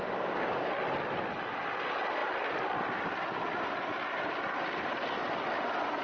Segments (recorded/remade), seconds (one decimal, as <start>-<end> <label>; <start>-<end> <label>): 0.0-0.7 remade; 0.7-6.0 recorded